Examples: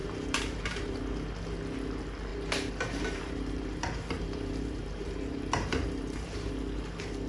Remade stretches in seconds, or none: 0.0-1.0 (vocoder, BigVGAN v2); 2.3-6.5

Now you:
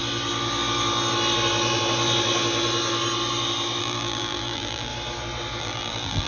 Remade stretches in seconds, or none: 3.8-4.9 (vocoder, BigVGAN v2); 5.6-6.3

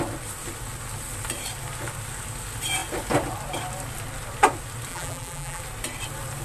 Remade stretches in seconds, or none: 4.9-5.6 (vocoder, BigVGAN v2)

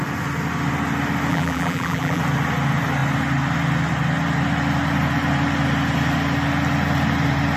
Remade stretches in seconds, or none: 1.3-2.2 (vocoder, BigVGAN v2)

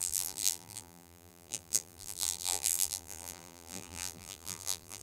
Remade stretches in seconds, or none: 0.0-5.0 (vocoder, BigVGAN v2)

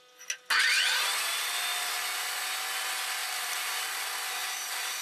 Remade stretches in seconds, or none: 3.2-3.9 (vocoder, BigVGAN v2); 4.4-5.0

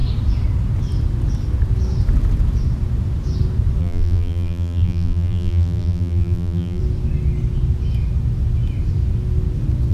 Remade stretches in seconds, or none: 3.8-6.8 (vocoder, BigVGAN v2)

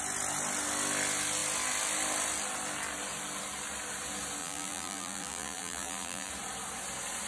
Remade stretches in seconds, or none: 4.4-6.3 (vocoder, BigVGAN v2)